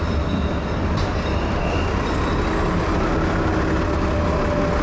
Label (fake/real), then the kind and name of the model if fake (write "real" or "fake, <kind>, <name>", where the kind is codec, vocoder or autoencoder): real